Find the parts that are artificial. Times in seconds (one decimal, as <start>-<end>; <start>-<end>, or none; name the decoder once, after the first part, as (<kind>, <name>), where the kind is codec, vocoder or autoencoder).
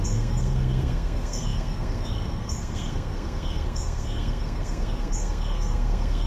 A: 0.0-6.3 (codec, SNAC)